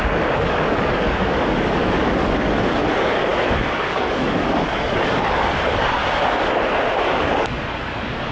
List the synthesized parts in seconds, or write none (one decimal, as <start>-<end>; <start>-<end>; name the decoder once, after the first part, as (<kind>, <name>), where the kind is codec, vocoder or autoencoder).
0.0-6.0 (codec, DAC); 7.0-8.3